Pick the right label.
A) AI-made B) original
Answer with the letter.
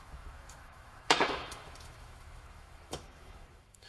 A